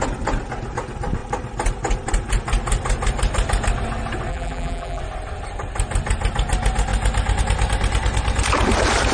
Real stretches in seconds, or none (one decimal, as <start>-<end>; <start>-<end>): 0.0-4.3; 5.0-9.1